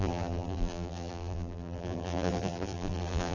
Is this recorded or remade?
remade